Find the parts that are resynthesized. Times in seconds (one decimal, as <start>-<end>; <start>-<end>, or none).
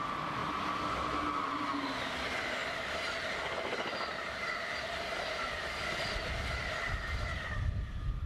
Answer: none